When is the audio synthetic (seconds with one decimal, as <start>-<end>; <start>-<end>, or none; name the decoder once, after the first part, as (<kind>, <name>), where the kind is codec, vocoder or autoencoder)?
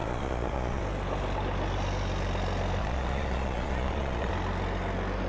0.0-0.8 (vocoder, Vocos); 2.8-4.3